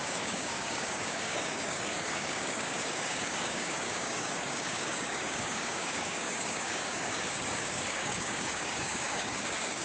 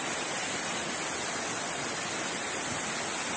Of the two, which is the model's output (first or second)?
first